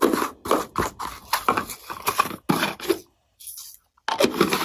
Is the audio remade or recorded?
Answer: recorded